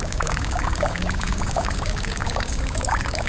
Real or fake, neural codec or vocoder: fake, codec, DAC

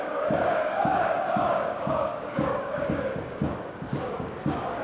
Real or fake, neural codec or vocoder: fake, codec, DAC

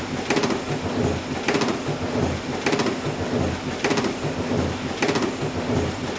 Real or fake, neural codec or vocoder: real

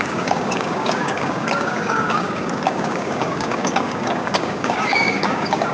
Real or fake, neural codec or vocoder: fake, codec, DAC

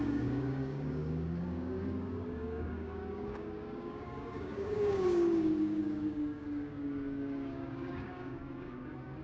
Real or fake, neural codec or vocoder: fake, codec, DAC